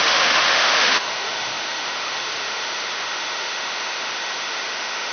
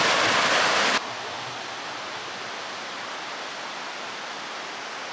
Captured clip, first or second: second